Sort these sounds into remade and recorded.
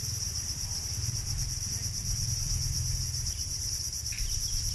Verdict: remade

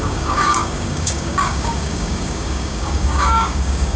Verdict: remade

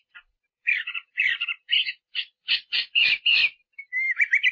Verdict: remade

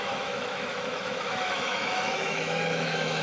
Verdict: remade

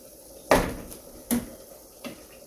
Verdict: recorded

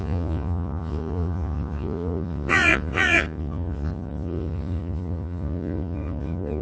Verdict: remade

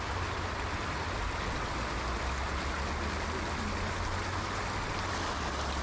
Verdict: recorded